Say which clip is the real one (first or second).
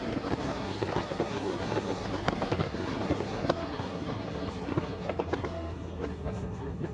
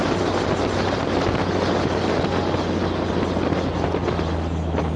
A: second